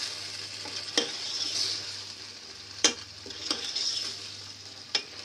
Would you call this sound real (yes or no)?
no